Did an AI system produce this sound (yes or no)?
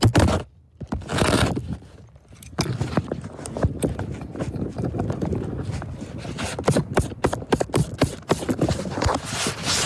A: no